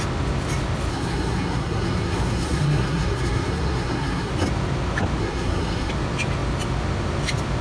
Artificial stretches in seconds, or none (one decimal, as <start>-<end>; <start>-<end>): 0.9-4.3; 5.2-5.9